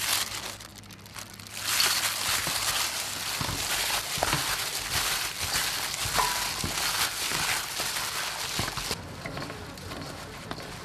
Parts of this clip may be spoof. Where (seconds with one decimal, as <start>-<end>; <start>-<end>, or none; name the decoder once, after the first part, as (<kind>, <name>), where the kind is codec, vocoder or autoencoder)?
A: none